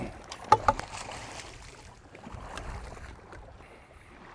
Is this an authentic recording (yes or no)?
yes